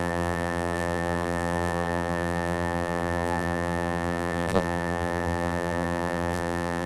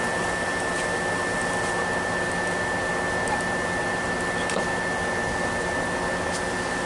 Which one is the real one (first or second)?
second